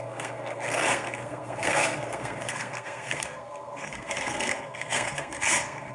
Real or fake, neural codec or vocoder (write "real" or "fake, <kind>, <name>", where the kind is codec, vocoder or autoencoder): fake, codec, SNAC